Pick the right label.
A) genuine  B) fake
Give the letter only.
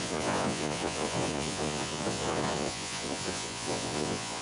B